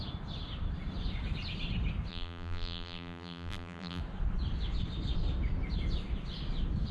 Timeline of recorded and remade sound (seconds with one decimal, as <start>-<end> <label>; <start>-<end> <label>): 0.0-2.1 recorded; 2.1-4.0 remade; 4.0-6.9 recorded